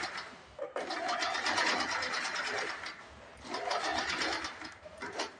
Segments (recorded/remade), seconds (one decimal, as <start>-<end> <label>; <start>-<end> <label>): 0.0-5.4 remade